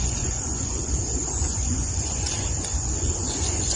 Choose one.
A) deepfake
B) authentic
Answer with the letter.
A